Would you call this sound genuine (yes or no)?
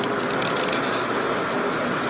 yes